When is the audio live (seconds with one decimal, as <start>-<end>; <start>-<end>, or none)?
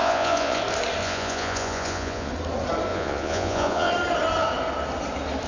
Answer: 0.6-1.0; 2.3-2.9; 3.9-5.5